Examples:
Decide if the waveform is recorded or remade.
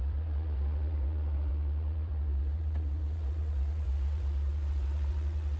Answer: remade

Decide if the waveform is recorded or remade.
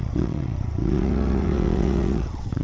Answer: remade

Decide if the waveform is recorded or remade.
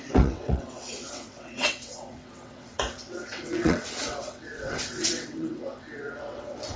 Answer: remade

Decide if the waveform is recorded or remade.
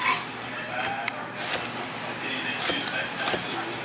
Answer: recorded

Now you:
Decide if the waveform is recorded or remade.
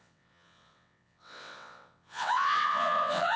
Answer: remade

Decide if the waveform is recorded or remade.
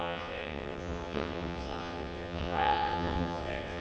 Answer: remade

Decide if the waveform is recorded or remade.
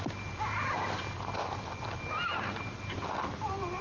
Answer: recorded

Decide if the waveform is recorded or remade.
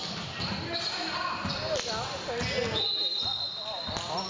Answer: recorded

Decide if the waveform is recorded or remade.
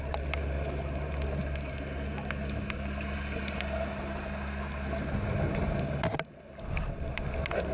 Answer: recorded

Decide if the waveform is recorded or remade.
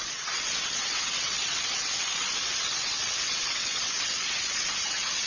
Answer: remade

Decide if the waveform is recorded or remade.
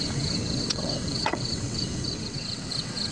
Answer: remade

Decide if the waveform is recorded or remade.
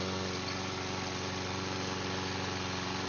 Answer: recorded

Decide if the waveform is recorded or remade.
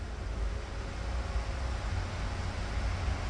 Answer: recorded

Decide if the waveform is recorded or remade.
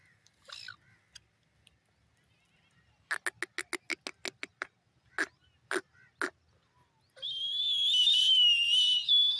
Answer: recorded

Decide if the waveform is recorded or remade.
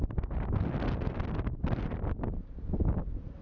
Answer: recorded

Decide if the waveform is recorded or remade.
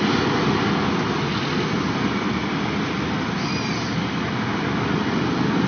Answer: recorded